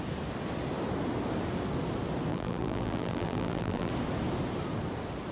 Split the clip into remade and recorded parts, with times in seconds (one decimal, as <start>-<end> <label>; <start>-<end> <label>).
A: 0.0-2.3 recorded; 2.3-3.9 remade; 3.9-5.3 recorded

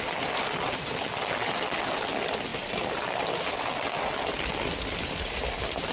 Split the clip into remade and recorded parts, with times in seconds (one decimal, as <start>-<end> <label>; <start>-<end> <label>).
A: 0.0-5.9 recorded

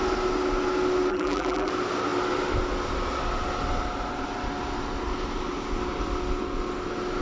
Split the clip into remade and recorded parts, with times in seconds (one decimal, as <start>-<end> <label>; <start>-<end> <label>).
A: 0.0-1.1 recorded; 1.1-1.7 remade; 1.7-7.2 recorded

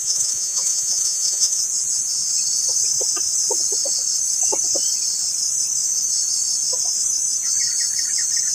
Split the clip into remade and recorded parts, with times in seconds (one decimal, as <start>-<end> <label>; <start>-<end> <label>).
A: 0.0-1.6 remade; 1.6-8.5 recorded

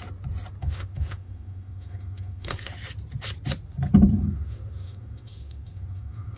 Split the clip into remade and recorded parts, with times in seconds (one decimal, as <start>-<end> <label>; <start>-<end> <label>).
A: 0.0-0.6 recorded; 0.6-2.7 remade; 2.7-4.1 recorded; 4.1-6.4 remade

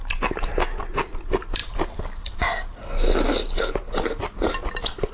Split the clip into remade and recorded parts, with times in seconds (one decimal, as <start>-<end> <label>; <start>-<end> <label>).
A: 0.0-5.1 recorded

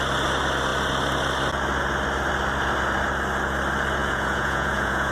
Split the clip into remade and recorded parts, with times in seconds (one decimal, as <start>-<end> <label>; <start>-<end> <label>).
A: 0.0-4.0 recorded; 4.0-5.1 remade

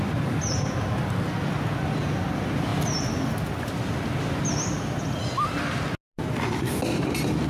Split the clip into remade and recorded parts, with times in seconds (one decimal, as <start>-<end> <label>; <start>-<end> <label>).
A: 0.0-7.5 recorded